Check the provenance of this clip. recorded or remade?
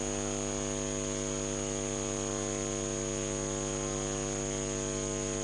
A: recorded